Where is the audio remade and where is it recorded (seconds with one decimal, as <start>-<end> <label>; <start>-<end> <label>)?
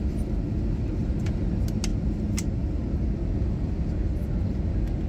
0.0-1.0 recorded; 1.0-1.5 remade; 1.5-5.1 recorded